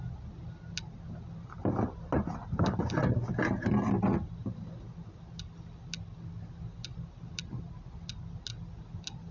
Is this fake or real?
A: real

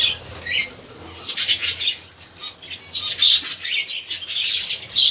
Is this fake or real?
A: real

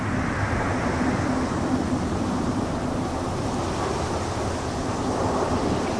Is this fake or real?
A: real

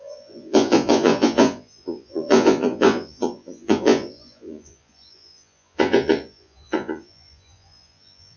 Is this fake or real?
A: fake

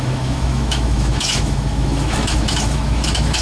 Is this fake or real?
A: fake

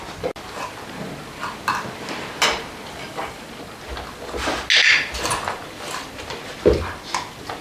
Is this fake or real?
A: real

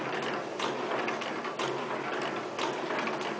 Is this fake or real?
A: real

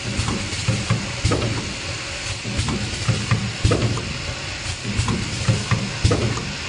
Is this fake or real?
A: real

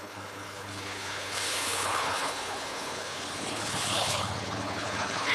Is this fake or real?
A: fake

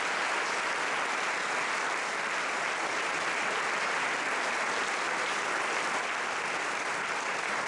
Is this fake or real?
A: real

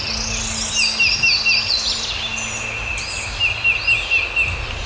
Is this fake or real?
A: real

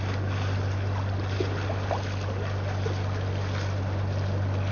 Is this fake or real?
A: real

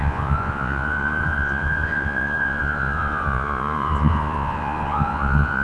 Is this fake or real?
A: fake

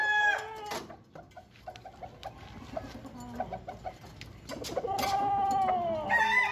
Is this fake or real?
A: real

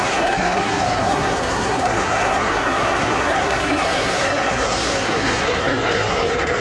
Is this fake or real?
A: fake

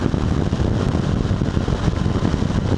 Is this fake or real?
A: real